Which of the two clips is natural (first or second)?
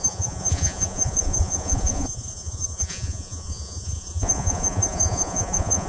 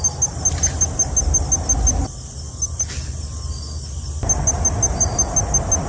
second